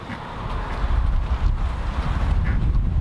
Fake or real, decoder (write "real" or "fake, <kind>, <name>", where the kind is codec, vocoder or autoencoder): real